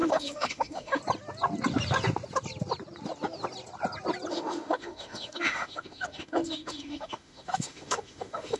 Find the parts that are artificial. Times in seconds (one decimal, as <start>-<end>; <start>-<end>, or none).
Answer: 0.0-1.0; 4.3-8.6